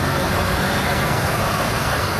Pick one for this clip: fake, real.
fake